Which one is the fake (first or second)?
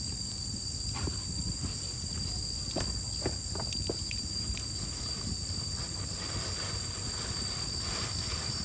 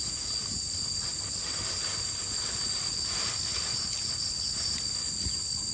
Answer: first